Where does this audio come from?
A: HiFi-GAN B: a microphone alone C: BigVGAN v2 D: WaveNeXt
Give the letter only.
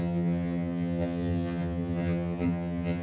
A